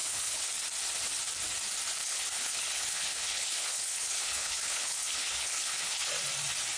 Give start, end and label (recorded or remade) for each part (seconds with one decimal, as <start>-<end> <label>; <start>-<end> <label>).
0.0-0.5 remade; 0.5-2.0 recorded; 2.0-6.1 remade; 6.1-6.8 recorded